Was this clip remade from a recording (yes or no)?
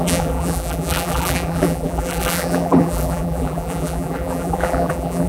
yes